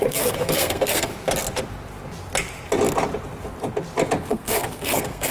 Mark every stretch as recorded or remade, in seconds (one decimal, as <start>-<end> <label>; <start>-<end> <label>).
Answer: 0.0-1.1 remade; 1.1-4.3 recorded; 4.3-5.3 remade

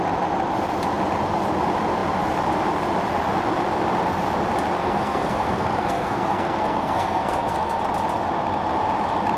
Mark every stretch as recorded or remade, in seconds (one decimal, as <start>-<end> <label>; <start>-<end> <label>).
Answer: 0.0-4.8 recorded; 4.8-7.8 remade; 7.8-9.4 recorded